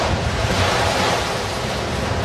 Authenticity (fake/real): real